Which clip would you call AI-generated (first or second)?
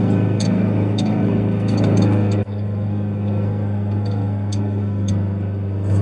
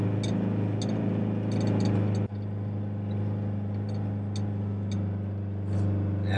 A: first